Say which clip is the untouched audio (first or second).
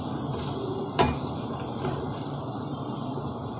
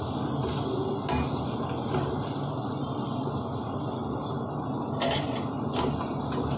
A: second